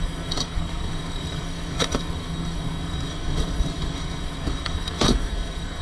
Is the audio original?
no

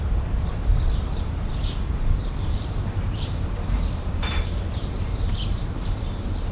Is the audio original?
no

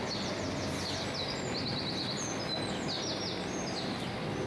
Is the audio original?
yes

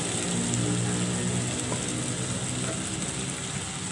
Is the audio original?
yes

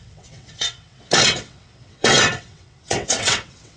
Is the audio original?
no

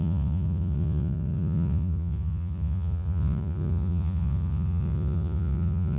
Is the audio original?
no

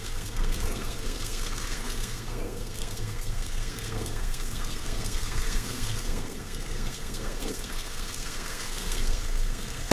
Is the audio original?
no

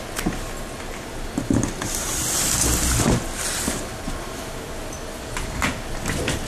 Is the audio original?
yes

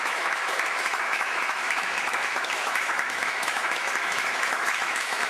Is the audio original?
no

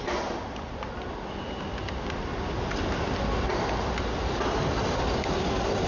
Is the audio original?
yes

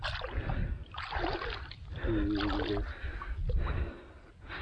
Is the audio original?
yes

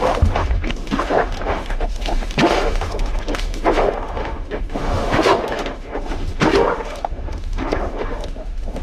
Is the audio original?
no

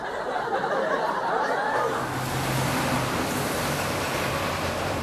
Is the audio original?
yes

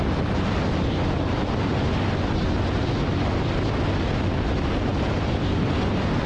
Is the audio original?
yes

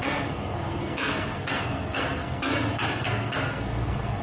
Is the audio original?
no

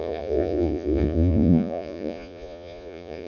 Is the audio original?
no